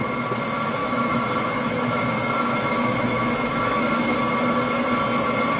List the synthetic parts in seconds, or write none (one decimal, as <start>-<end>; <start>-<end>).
0.8-4.2